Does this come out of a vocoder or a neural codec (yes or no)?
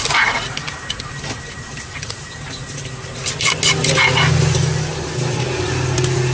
no